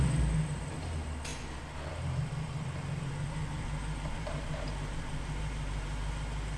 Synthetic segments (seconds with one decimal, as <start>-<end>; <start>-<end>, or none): 3.4-6.1